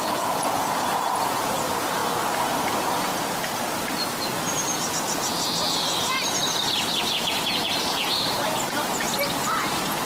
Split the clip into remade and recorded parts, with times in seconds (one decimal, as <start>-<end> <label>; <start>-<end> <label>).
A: 0.0-2.0 remade; 2.0-7.1 recorded; 7.1-8.1 remade; 8.1-10.1 recorded